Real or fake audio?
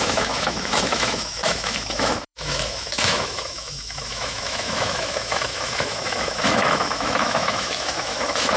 fake